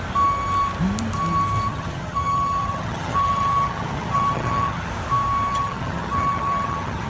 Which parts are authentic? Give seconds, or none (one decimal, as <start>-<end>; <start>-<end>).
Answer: 0.0-1.7; 4.9-5.5